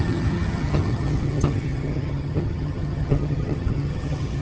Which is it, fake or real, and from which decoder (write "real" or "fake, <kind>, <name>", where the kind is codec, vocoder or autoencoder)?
fake, vocoder, HiFi-GAN